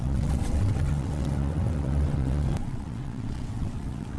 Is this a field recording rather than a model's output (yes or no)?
no